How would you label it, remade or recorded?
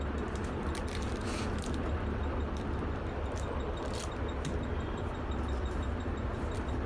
recorded